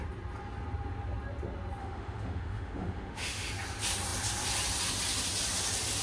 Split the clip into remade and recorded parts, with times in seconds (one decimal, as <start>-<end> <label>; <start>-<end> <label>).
0.0-1.8 recorded; 1.8-3.5 remade; 3.5-6.0 recorded